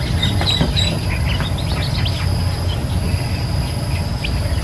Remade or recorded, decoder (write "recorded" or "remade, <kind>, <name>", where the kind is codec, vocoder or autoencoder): recorded